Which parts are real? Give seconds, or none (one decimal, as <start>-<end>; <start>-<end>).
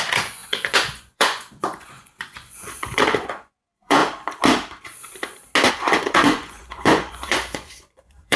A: 4.0-5.7